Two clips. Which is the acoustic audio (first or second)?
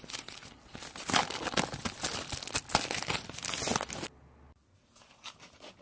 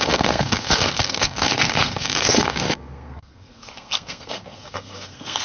first